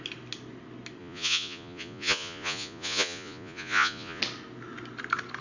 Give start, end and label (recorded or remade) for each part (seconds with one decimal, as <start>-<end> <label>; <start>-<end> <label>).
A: 0.0-1.0 recorded; 1.0-4.2 remade; 4.2-5.4 recorded